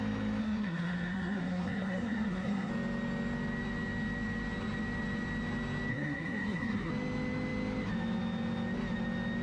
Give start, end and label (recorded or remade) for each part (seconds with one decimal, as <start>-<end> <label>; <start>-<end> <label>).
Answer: 0.0-0.4 recorded; 0.4-2.7 remade; 2.7-5.9 recorded; 5.9-6.9 remade; 6.9-9.4 recorded